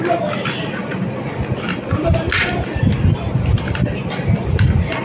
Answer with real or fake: real